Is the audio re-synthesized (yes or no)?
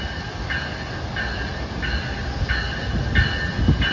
no